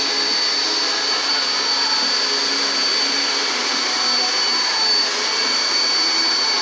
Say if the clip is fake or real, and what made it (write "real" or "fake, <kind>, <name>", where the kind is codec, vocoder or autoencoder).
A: real